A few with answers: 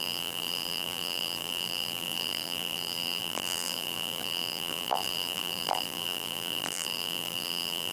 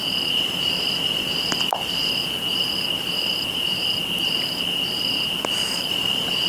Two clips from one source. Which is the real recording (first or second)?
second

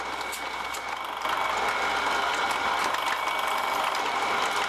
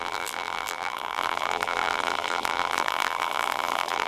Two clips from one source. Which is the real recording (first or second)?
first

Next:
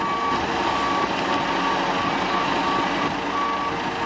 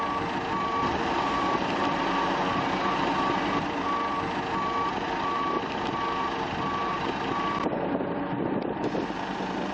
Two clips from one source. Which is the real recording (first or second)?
first